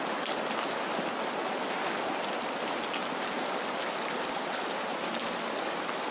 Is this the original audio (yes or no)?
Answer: yes